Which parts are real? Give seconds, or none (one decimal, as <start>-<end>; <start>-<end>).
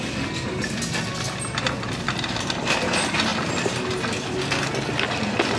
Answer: 0.0-5.6